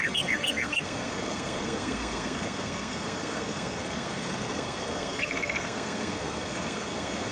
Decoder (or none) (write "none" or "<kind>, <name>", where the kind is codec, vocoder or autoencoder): codec, SNAC